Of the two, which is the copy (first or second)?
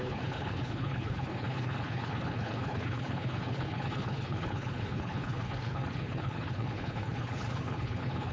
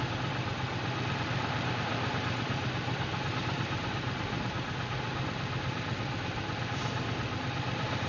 first